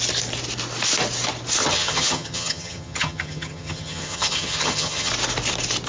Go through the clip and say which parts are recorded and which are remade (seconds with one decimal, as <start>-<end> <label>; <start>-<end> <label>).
0.0-1.6 recorded; 1.6-5.1 remade; 5.1-5.9 recorded